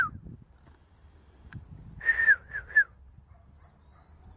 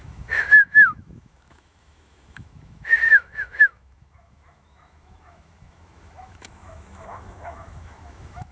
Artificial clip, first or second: second